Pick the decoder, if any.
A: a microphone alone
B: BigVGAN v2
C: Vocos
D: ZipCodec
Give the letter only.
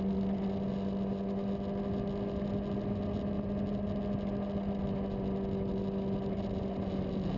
A